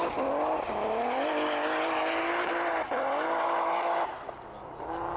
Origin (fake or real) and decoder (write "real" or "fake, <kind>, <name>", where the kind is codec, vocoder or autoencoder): real